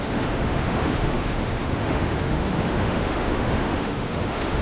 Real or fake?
fake